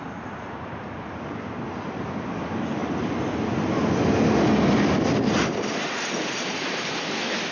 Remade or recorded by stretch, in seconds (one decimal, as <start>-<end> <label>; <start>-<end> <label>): 0.0-7.5 recorded